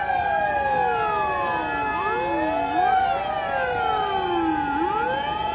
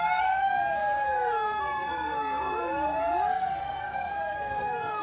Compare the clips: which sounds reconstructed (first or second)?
second